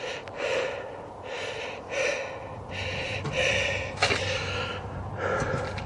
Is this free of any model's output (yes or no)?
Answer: yes